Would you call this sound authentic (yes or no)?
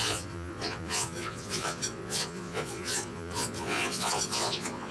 no